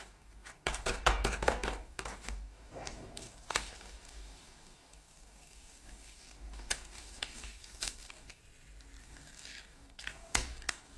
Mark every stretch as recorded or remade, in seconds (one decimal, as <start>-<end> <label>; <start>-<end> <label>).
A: 0.0-8.4 remade; 8.4-9.0 recorded; 9.0-11.0 remade